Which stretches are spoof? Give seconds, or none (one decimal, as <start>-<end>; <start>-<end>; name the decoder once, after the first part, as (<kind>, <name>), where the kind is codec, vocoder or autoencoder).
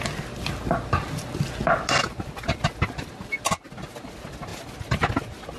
none